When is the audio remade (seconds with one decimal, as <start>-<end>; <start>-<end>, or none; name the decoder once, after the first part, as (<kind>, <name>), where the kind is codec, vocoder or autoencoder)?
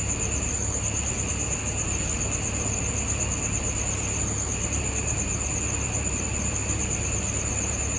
none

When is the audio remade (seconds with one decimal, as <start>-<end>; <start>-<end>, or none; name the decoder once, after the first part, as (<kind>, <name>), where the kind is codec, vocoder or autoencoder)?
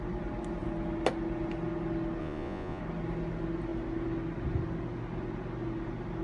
2.2-2.8 (vocoder, Vocos)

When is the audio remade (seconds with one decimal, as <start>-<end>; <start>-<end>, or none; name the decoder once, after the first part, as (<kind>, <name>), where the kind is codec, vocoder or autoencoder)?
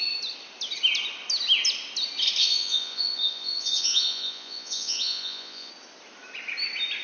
2.4-5.7 (vocoder, Vocos)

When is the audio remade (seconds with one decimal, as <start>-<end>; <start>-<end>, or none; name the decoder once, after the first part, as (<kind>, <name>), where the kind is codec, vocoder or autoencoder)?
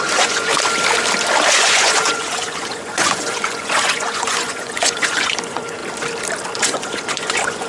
0.0-0.5 (vocoder, Vocos); 1.5-5.8; 6.6-7.7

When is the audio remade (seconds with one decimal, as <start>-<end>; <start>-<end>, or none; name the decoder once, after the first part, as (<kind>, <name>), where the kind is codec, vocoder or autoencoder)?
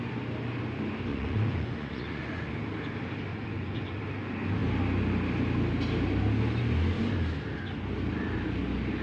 1.1-2.5 (vocoder, Vocos); 3.3-4.0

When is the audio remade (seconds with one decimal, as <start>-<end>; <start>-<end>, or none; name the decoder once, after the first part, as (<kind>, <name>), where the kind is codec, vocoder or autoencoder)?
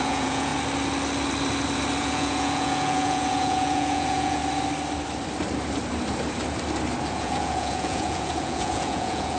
0.0-0.5 (vocoder, Vocos); 2.0-4.4; 7.1-9.4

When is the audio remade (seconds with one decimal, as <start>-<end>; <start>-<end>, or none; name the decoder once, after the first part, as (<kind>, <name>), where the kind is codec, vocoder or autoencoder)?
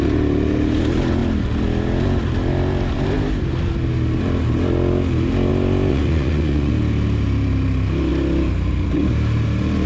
5.9-6.7 (vocoder, Vocos)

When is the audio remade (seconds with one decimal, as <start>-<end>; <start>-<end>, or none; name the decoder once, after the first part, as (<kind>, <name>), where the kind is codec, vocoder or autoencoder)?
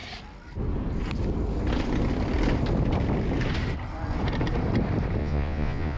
5.2-6.0 (vocoder, Vocos)